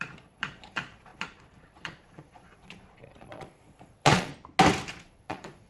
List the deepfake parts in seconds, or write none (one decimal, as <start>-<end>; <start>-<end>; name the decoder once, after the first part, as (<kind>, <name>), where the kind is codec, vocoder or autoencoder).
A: 0.0-4.3 (vocoder, Vocos); 4.9-5.7